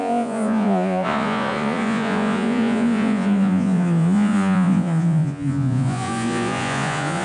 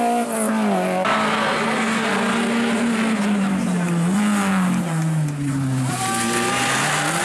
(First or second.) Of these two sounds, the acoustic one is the second